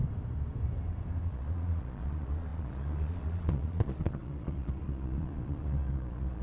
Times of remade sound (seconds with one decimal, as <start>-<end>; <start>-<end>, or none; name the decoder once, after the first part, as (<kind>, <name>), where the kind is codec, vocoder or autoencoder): 1.2-6.4 (vocoder, Vocos)